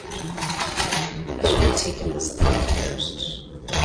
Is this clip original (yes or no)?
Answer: no